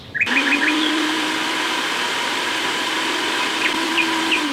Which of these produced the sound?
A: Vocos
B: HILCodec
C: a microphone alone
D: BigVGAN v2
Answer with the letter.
D